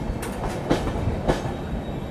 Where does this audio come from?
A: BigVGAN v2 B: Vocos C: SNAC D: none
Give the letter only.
D